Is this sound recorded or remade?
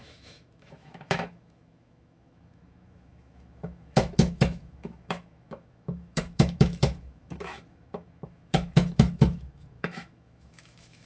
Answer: remade